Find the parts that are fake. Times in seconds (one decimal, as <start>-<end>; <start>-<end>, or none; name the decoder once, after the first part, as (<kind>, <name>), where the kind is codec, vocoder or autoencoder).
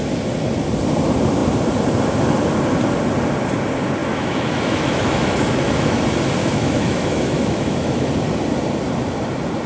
4.0-6.0 (autoencoder, DAC-VAE); 6.4-8.1